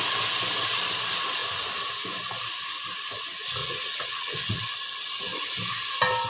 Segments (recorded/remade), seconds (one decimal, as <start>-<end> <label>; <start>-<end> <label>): 0.0-3.6 recorded; 3.6-4.6 remade; 4.6-6.3 recorded